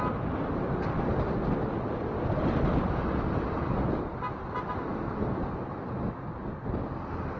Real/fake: real